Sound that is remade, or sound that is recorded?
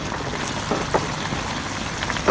recorded